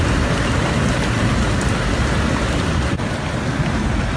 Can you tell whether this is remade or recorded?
recorded